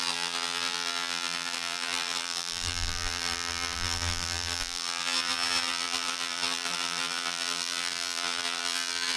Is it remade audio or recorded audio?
remade